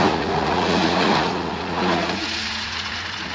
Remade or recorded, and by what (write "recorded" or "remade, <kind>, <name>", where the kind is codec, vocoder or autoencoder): remade, vocoder, Vocos